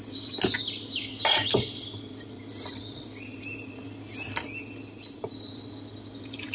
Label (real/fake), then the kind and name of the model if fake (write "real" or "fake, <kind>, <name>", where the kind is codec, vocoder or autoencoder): real